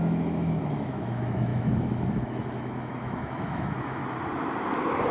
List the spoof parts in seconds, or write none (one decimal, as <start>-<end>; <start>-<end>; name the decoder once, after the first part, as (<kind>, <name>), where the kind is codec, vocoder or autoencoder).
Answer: 0.0-4.0 (autoencoder, DAC-VAE)